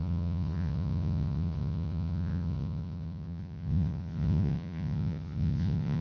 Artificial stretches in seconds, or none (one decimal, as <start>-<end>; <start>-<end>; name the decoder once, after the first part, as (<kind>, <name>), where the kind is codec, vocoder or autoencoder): 0.0-6.0 (vocoder, Vocos)